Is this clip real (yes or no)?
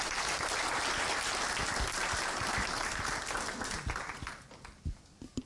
yes